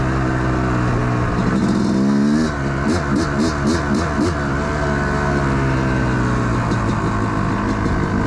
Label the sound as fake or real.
real